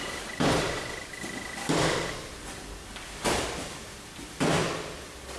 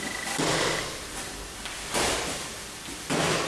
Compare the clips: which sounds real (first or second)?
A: second